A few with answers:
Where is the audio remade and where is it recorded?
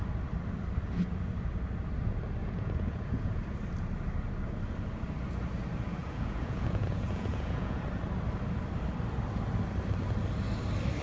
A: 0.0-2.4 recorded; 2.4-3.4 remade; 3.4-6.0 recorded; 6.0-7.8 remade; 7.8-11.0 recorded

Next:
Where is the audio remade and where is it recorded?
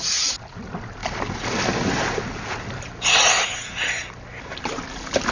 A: 0.0-5.3 recorded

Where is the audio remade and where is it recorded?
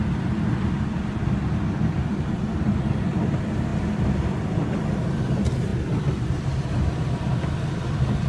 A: 0.0-8.3 recorded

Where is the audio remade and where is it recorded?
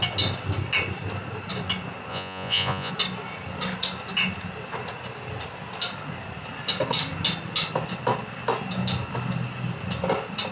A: 0.0-2.1 recorded; 2.1-2.9 remade; 2.9-10.5 recorded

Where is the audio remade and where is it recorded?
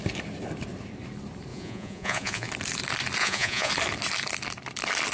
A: 0.0-1.5 recorded; 1.5-2.5 remade; 2.5-3.2 recorded; 3.2-3.7 remade; 3.7-5.1 recorded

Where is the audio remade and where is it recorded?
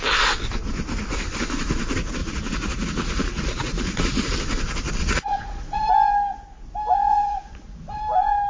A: 0.0-2.2 recorded; 2.2-4.3 remade; 4.3-5.0 recorded; 5.0-5.9 remade; 5.9-7.1 recorded; 7.1-8.0 remade; 8.0-8.5 recorded